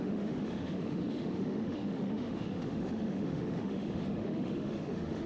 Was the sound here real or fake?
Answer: fake